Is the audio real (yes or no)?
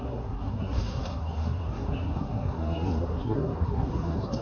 no